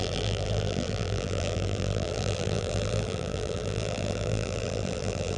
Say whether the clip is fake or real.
fake